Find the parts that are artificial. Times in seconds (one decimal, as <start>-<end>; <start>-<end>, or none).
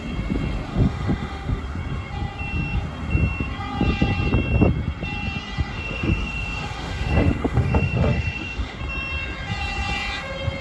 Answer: 0.7-1.6; 5.7-8.8